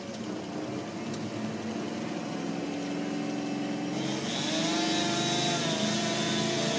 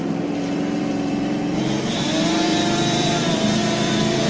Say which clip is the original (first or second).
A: first